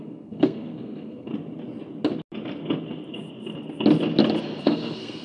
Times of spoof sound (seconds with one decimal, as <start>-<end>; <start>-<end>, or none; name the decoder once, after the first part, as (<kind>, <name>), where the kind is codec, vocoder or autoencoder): 0.0-1.3 (codec, SNAC); 4.4-5.2